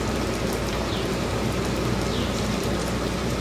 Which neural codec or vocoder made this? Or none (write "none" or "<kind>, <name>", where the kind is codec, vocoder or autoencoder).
vocoder, BigVGAN v2